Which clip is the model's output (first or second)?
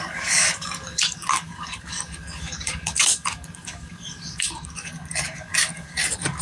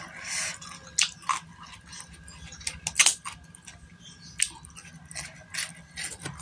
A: first